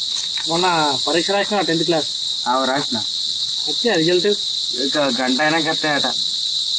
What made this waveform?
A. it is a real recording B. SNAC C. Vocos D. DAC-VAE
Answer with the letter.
A